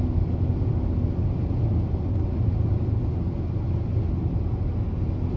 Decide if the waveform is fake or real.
real